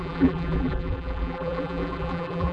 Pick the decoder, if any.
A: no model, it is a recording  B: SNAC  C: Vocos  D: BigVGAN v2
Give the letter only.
D